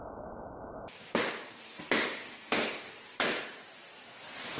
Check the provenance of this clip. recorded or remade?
recorded